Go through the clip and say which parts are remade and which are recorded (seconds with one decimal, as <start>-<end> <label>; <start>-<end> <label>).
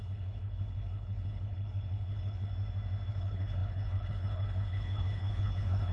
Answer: 0.0-2.5 remade; 2.5-3.1 recorded; 3.1-5.9 remade